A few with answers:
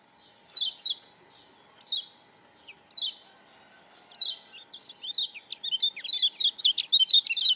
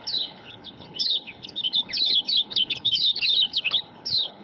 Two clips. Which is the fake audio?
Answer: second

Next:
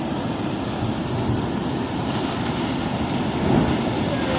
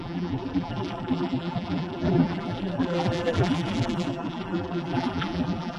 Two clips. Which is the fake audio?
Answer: second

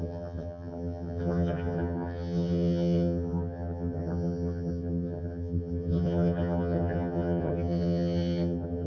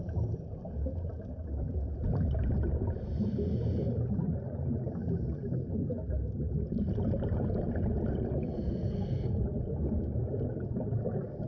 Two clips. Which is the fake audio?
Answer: first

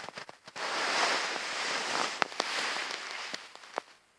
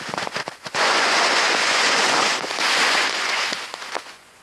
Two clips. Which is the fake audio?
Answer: second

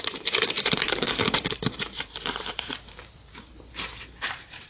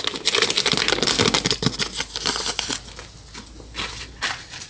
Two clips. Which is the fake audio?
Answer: first